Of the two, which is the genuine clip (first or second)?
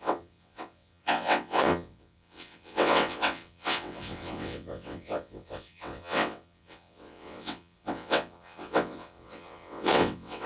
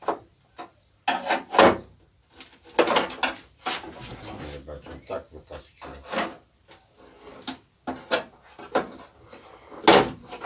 second